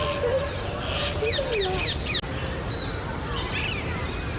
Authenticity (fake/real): real